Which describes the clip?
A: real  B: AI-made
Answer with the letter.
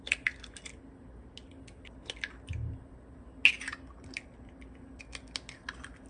A